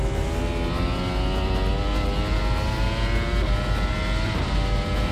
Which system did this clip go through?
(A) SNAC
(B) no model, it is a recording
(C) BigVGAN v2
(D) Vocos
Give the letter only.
B